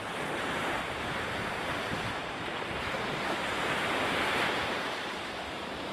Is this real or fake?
fake